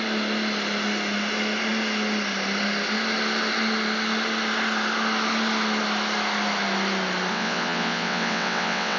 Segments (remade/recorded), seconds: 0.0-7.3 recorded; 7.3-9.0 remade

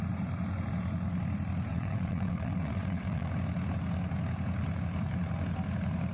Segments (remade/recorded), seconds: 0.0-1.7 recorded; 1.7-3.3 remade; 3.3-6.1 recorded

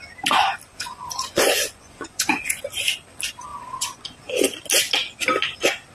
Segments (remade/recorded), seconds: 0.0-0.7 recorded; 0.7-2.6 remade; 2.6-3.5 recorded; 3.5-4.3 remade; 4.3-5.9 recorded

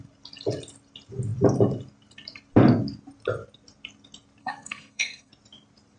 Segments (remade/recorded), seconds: 0.0-4.4 recorded; 4.4-5.3 remade; 5.3-6.0 recorded

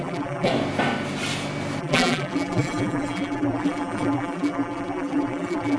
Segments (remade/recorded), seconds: 0.0-0.5 remade; 0.5-1.8 recorded; 1.8-5.8 remade